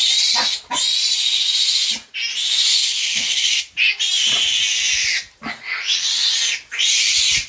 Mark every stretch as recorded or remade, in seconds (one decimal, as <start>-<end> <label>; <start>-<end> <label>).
0.0-2.7 recorded; 2.7-3.6 remade; 3.6-7.5 recorded